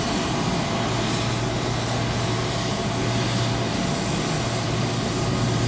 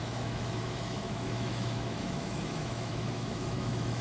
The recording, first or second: first